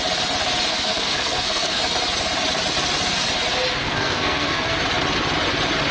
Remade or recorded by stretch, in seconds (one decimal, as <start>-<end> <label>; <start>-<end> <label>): 0.0-0.7 recorded; 0.7-1.8 remade; 1.8-3.8 recorded; 3.8-4.8 remade; 4.8-5.9 recorded